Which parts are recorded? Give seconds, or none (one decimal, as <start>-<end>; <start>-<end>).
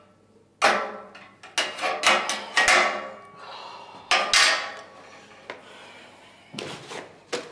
0.0-7.5